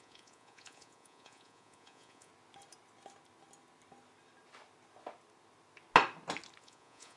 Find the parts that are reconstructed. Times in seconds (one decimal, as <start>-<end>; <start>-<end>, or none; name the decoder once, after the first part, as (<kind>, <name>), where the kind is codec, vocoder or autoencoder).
0.0-2.3 (vocoder, Vocos); 6.6-7.2